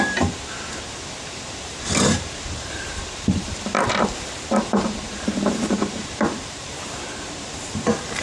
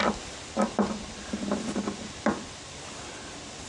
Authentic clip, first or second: second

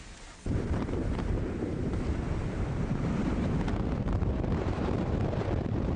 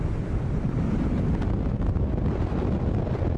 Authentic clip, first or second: second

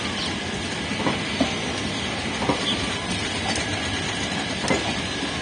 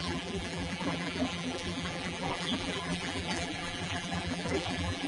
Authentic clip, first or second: first